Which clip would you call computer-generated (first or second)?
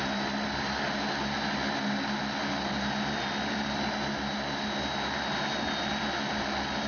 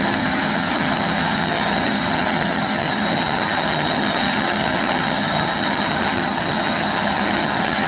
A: second